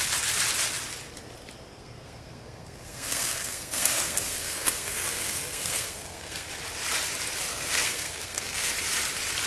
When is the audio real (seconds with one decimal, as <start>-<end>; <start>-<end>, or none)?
0.0-1.7; 6.5-7.5; 8.7-9.5